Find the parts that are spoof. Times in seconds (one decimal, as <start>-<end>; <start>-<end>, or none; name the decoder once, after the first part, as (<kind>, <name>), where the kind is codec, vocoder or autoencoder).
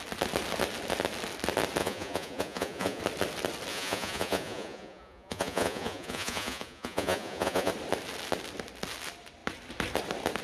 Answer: 1.8-3.0 (vocoder, Vocos); 3.7-7.7